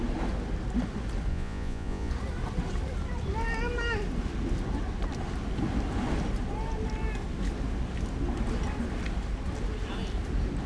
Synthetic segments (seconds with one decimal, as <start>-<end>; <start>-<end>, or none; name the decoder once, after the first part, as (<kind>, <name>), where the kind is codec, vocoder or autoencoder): 1.3-2.1 (vocoder, Vocos)